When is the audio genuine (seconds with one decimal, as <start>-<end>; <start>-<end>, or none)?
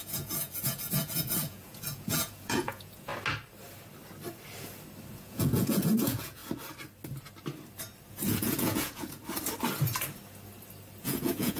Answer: 3.1-5.1; 6.4-8.1; 9.2-11.0